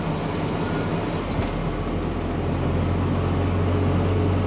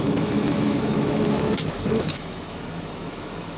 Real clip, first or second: first